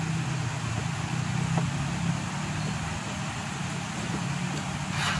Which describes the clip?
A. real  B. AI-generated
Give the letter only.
A